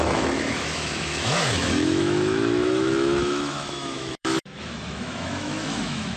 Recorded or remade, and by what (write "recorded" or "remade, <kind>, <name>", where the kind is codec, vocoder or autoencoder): remade, autoencoder, DAC-VAE